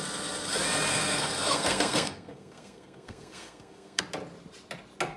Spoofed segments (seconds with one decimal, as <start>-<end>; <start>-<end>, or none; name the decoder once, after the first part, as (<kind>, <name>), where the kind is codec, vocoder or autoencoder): 0.9-4.0 (codec, SNAC)